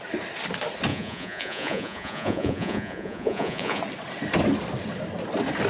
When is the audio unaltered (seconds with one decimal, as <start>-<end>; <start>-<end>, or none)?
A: 0.0-0.9; 3.8-5.7